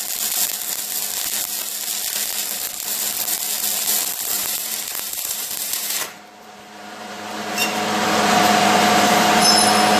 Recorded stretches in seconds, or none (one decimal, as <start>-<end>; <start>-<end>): 0.0-4.3; 9.4-10.0

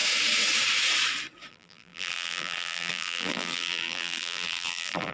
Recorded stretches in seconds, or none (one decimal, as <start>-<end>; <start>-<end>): 0.0-1.5

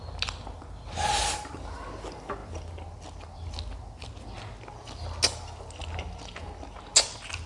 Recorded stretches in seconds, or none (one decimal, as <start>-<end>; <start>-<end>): 0.0-7.5

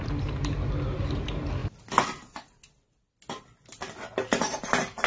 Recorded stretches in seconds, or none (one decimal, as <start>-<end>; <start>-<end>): 1.6-4.2